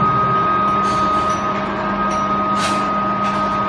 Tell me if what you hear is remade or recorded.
recorded